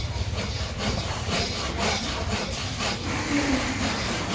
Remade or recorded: remade